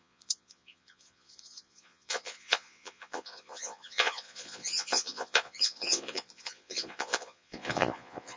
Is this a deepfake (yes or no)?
yes